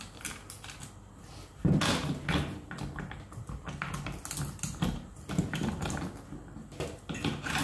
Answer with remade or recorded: recorded